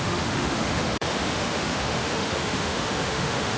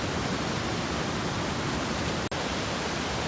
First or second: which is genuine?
second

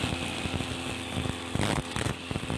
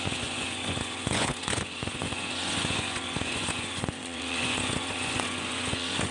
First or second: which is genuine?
first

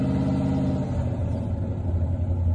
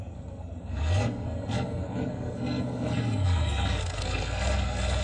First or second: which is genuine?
first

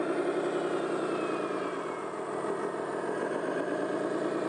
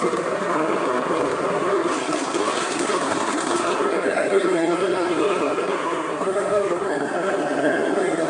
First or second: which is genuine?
first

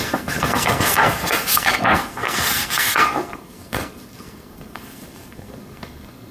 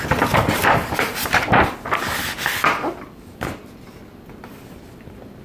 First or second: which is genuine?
second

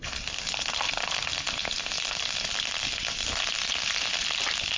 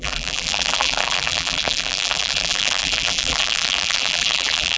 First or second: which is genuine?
first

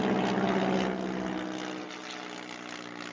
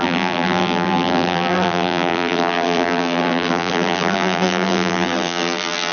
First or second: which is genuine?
first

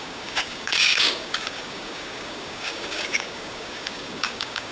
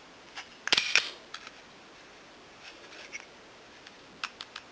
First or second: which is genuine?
second